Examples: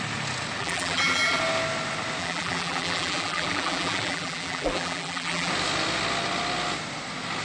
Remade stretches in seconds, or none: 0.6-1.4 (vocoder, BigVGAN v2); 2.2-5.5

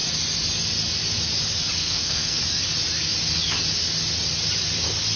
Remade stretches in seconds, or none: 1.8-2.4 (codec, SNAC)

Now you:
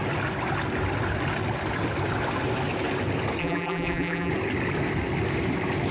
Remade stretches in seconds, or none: 3.4-4.3 (vocoder, BigVGAN v2)

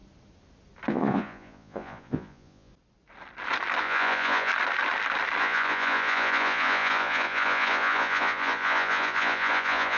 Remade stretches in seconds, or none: 0.9-2.7 (vocoder, Vocos); 3.8-4.5; 5.4-10.0

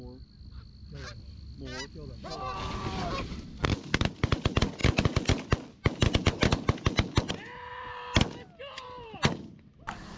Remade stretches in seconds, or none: none

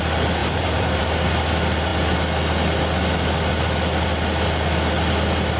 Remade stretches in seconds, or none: 0.4-1.0 (vocoder, BigVGAN v2)

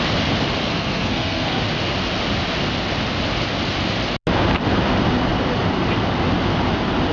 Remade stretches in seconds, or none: 0.6-1.6 (codec, SNAC)

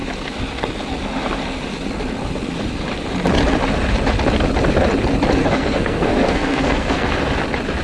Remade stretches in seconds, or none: 5.4-7.1 (codec, SNAC)